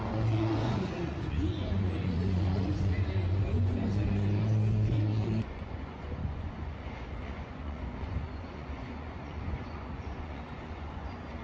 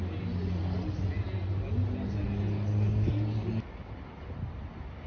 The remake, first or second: first